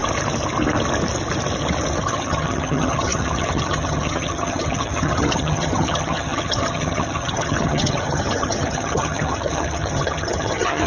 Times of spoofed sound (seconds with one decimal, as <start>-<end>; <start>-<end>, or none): 2.0-10.9